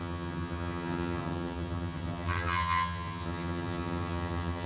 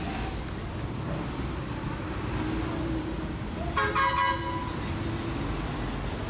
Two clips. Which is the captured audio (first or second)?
second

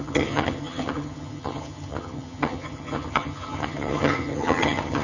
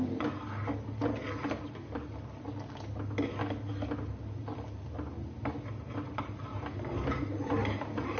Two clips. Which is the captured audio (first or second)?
second